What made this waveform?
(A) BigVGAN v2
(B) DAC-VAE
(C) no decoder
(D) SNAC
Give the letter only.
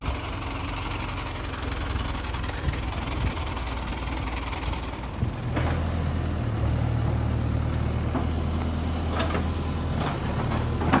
C